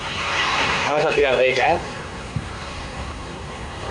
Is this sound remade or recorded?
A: remade